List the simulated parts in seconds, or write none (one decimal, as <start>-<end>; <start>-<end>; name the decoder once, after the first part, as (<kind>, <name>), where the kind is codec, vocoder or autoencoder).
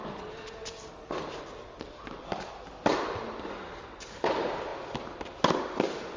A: none